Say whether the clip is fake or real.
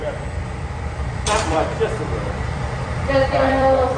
fake